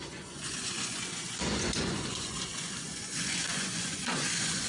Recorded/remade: remade